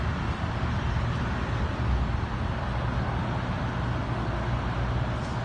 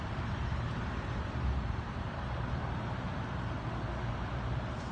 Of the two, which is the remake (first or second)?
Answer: second